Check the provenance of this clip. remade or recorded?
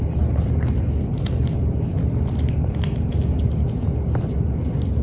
recorded